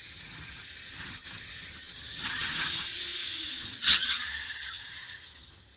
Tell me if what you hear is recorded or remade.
remade